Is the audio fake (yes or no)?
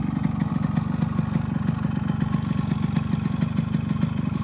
no